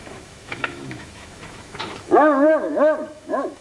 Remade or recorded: remade